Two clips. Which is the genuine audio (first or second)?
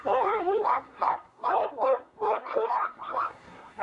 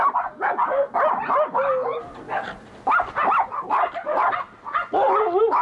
second